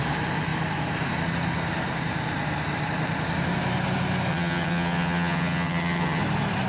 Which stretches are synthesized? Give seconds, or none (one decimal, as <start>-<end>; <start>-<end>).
4.3-6.2